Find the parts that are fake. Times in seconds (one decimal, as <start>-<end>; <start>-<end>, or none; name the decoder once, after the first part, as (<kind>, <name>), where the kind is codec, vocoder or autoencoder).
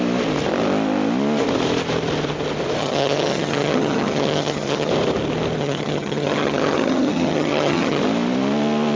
2.8-4.9 (vocoder, HiFi-GAN); 5.6-8.0